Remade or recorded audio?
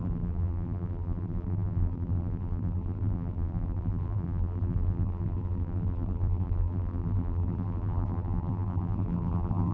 remade